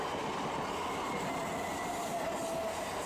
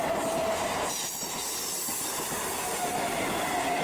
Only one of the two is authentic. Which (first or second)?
first